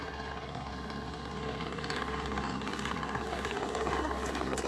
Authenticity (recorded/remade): remade